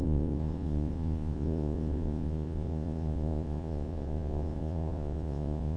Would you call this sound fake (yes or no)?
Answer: yes